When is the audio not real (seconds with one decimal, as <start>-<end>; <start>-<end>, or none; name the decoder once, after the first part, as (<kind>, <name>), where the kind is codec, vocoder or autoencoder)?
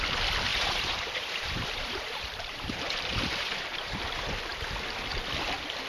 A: 0.5-4.0 (vocoder, BigVGAN v2)